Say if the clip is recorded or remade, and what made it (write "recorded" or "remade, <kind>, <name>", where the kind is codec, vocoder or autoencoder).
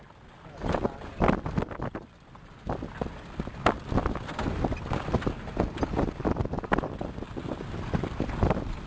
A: recorded